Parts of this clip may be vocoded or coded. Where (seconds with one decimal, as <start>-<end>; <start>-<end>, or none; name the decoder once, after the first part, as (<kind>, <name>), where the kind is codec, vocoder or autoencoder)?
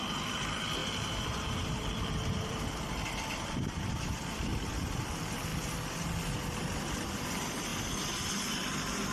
0.0-4.5 (vocoder, BigVGAN v2); 5.0-5.5; 6.9-7.7; 8.5-9.1